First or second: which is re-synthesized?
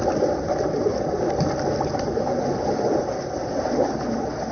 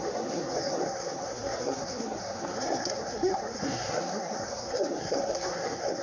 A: second